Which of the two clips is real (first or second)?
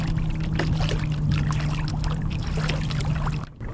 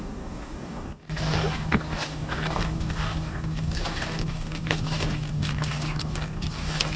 first